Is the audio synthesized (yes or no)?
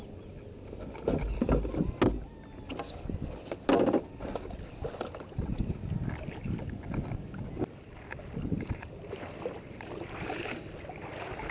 no